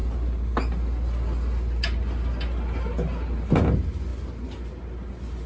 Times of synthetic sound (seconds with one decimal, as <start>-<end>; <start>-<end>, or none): none